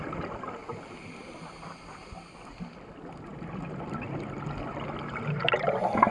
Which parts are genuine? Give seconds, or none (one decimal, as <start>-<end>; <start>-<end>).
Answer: 0.0-6.1